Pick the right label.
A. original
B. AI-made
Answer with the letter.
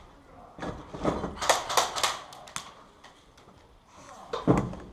A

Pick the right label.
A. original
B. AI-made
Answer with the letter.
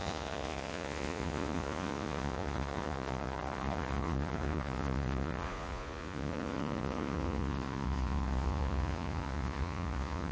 B